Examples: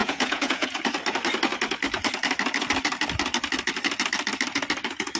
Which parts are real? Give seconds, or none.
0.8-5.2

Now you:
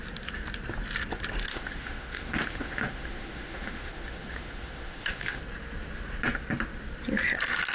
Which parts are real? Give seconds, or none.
0.0-1.5; 5.4-7.7

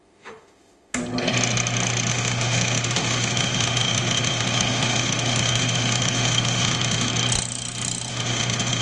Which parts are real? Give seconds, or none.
1.0-2.1; 7.1-8.1

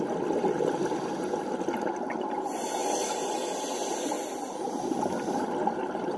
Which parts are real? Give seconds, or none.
0.0-6.2

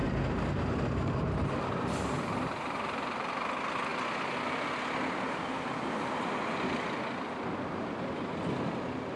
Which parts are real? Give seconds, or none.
3.3-9.2

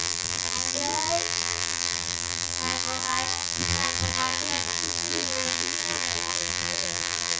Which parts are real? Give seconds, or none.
none